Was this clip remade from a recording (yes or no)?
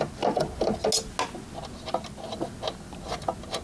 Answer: no